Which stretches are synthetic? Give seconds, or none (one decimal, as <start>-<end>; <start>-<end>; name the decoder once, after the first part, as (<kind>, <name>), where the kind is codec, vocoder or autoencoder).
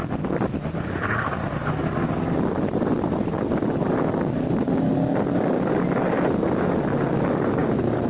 7.6-8.1 (vocoder, Vocos)